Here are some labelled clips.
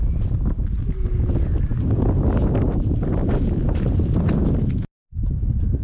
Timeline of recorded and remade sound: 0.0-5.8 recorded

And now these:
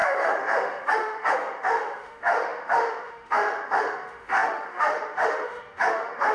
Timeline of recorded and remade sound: 0.0-6.3 remade